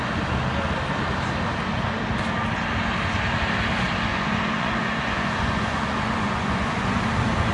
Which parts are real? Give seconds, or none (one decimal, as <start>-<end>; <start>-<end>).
0.0-4.1; 7.0-7.5